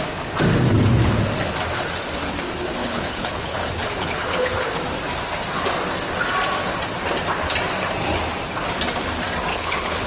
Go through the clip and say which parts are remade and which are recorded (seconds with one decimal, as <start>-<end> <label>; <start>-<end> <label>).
0.0-2.8 recorded; 2.8-4.8 remade; 4.8-9.5 recorded; 9.5-10.1 remade